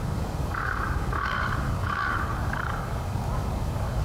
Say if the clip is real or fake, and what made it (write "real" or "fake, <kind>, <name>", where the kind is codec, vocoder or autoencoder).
fake, codec, DAC